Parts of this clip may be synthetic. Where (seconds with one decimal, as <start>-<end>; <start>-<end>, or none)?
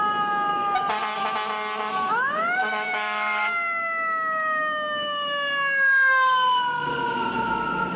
0.0-0.5; 2.1-6.9